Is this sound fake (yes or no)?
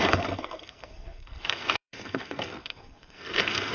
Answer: yes